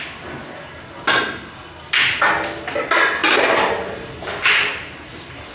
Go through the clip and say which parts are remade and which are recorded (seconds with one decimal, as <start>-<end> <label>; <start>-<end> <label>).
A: 0.0-5.5 recorded